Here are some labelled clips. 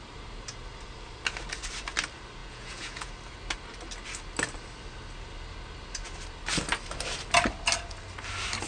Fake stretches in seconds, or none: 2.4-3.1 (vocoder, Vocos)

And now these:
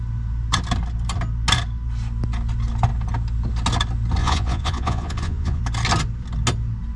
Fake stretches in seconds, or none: 4.2-5.6 (vocoder, Vocos)